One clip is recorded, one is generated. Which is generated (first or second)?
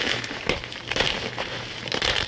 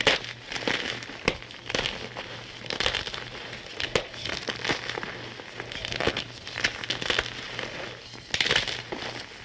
first